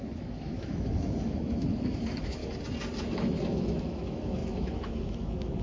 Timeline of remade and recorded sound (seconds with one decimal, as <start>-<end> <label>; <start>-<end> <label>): 0.0-2.4 remade; 2.4-3.0 recorded; 3.0-5.6 remade